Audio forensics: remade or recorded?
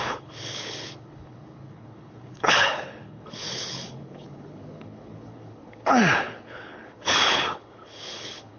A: remade